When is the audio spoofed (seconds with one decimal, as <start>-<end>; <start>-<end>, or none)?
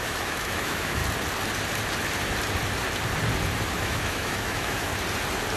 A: 0.0-1.0; 3.7-4.9